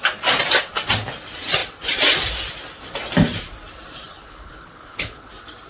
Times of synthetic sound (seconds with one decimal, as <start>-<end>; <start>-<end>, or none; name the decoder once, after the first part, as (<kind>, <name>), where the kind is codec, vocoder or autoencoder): 4.2-5.3 (codec, HILCodec)